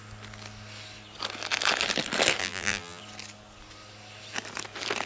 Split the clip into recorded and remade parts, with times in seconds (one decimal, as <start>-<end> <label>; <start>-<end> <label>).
0.0-2.4 recorded; 2.4-3.0 remade; 3.0-5.1 recorded